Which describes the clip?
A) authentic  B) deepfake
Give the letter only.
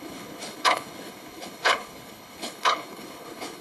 B